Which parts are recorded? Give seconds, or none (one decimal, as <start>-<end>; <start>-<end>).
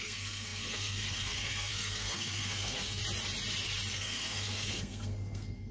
3.0-3.9